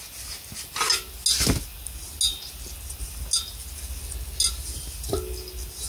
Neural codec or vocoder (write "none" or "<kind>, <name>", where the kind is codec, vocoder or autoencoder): none